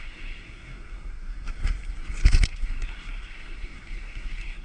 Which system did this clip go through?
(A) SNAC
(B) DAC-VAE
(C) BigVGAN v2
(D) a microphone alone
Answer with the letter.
A